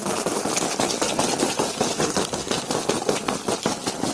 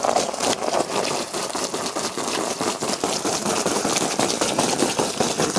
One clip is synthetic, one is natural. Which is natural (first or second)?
first